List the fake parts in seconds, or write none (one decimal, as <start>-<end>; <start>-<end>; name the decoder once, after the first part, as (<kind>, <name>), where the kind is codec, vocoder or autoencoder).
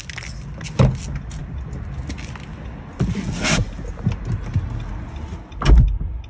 none